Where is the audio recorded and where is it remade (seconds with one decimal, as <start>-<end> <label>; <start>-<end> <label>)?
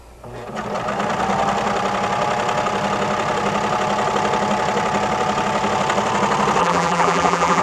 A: 0.0-6.6 recorded; 6.6-7.6 remade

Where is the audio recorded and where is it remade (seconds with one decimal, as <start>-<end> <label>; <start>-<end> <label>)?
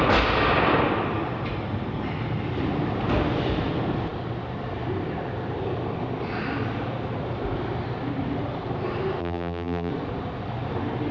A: 0.0-9.2 recorded; 9.2-9.9 remade; 9.9-11.1 recorded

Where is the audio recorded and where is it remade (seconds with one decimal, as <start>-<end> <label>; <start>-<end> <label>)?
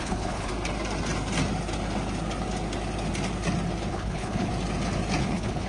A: 0.0-0.5 remade; 0.5-3.9 recorded; 3.9-4.5 remade; 4.5-5.2 recorded; 5.2-5.7 remade